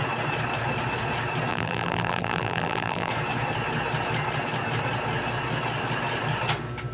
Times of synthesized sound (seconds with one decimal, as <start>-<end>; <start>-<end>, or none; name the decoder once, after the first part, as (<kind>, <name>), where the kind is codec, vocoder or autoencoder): 1.5-3.1 (vocoder, BigVGAN v2)